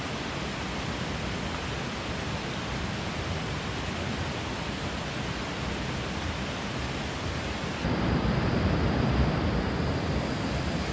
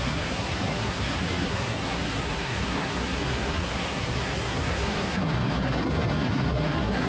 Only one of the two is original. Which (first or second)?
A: first